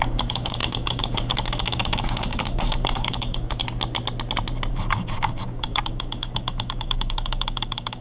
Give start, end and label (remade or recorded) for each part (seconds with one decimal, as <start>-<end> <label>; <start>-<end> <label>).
0.0-3.6 remade; 3.6-4.7 recorded; 4.7-8.0 remade